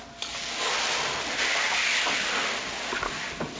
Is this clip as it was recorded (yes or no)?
yes